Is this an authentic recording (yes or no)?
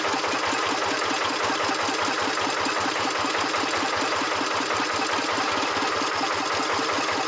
yes